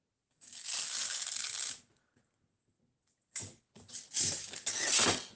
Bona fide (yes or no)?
yes